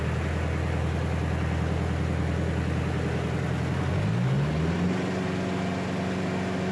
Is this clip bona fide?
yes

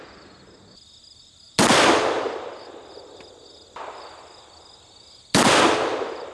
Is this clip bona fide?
yes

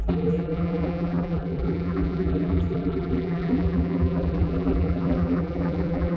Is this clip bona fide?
no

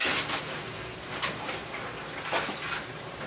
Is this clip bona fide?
yes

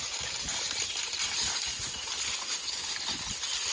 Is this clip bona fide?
no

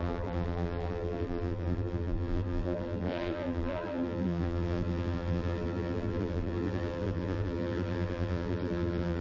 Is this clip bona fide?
no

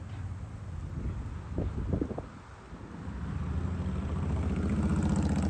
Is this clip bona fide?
yes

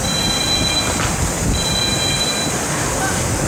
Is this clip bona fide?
yes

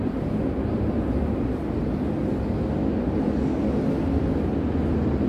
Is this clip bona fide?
yes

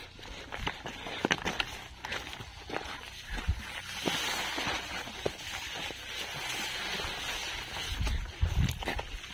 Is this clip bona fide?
yes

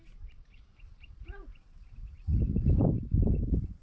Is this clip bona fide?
no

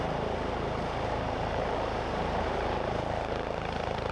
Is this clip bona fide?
no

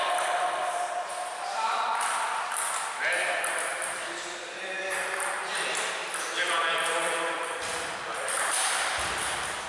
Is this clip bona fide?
no